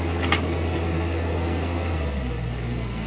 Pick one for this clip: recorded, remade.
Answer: remade